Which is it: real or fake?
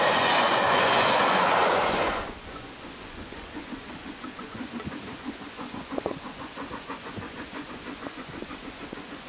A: fake